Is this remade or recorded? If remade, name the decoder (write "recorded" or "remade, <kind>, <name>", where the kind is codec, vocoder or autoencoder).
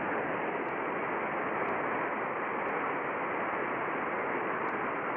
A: recorded